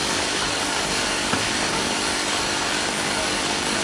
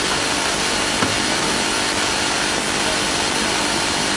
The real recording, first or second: second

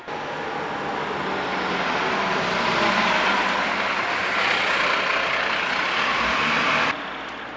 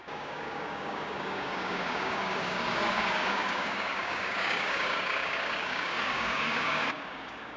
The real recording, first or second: first